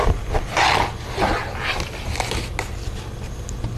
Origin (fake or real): real